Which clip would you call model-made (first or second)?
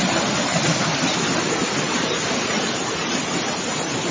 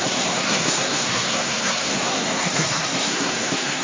second